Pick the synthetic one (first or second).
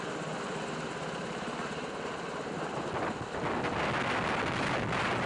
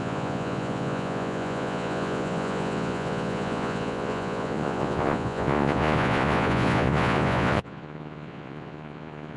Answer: second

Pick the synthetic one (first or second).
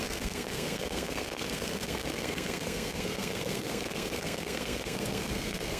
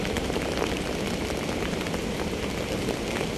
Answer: first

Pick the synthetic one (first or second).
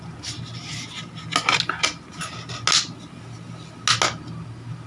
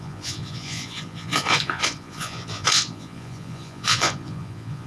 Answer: second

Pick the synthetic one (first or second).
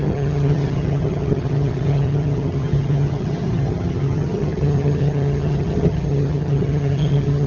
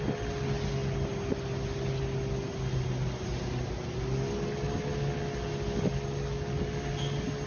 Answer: first